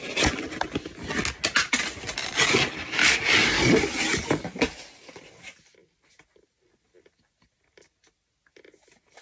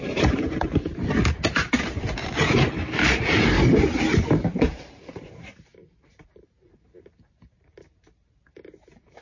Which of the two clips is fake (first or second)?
second